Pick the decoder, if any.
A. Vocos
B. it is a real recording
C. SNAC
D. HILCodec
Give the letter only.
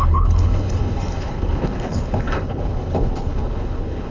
D